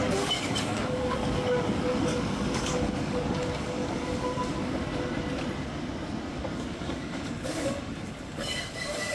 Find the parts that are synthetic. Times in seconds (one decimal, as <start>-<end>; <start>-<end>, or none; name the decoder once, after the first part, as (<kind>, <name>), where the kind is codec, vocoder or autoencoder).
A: 0.0-4.8 (codec, DAC); 6.3-9.1